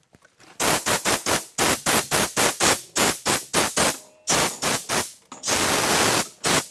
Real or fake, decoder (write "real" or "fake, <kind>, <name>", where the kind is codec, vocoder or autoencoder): real